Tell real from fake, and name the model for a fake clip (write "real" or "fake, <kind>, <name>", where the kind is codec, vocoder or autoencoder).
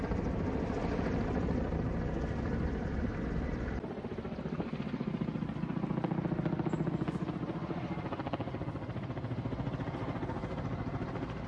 real